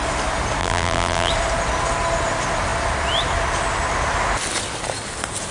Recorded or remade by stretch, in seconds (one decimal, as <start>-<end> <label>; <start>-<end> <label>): 0.0-0.6 recorded; 0.6-1.3 remade; 1.3-5.5 recorded